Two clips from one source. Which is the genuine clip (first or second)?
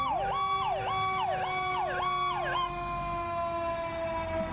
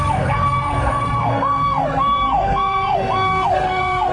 first